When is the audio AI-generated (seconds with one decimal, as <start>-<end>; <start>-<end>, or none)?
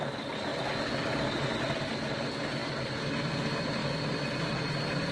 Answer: none